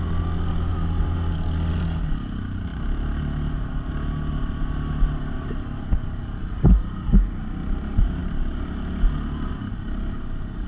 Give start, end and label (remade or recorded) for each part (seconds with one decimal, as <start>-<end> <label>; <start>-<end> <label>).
0.0-10.7 recorded